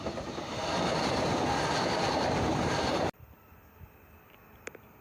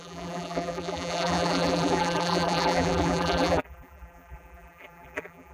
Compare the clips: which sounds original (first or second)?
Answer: first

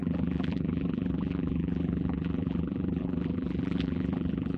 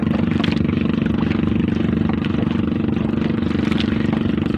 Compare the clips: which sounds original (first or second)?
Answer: second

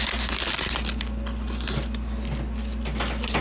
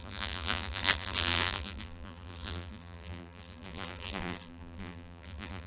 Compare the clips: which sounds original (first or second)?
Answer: first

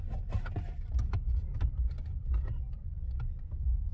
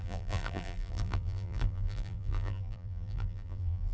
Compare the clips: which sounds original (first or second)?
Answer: first